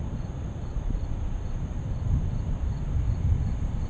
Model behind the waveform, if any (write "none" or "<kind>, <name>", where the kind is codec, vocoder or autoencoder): vocoder, BigVGAN v2